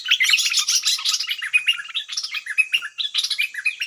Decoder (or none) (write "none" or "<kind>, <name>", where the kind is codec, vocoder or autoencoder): none